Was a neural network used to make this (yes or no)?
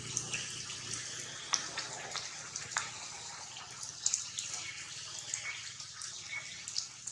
no